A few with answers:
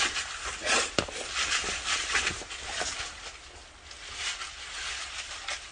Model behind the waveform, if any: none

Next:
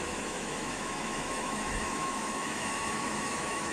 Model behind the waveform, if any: autoencoder, DAC-VAE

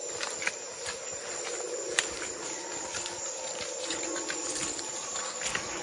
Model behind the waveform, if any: none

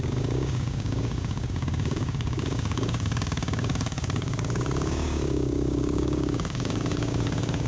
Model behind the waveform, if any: codec, DAC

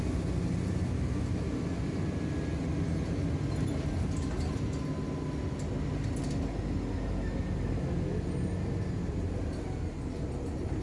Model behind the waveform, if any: none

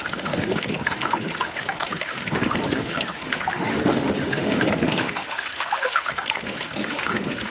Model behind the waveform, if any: autoencoder, DAC-VAE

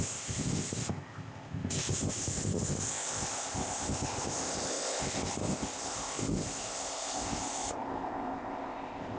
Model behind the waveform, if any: codec, ZipCodec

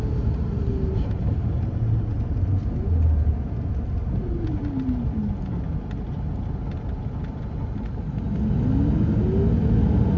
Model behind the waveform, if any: none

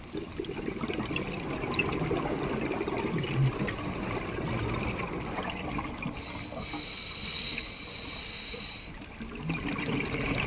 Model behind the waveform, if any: none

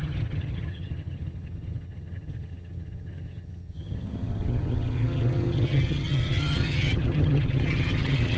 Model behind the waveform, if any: vocoder, HiFi-GAN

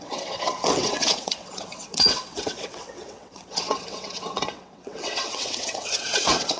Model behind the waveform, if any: vocoder, WaveNeXt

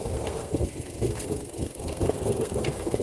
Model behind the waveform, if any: codec, SNAC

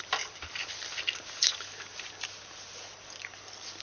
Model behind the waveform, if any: vocoder, BigVGAN v2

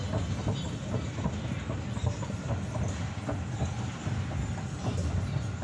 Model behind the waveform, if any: none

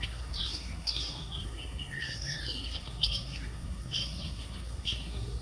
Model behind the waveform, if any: codec, SNAC